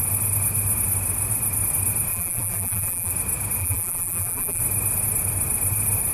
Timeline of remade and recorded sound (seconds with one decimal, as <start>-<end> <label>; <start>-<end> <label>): 0.0-2.1 recorded; 2.1-3.1 remade; 3.1-3.6 recorded; 3.6-4.6 remade; 4.6-6.1 recorded